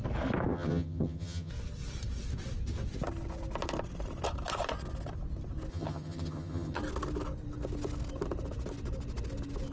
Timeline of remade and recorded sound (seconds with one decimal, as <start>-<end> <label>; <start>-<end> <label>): 0.0-0.5 recorded; 0.5-1.5 remade; 1.5-5.7 recorded; 5.7-6.8 remade; 6.8-9.7 recorded